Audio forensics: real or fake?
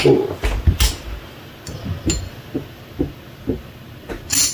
real